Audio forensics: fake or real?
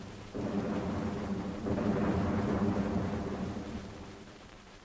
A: fake